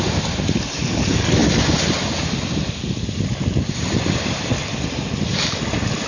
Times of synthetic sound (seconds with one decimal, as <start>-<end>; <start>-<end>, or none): none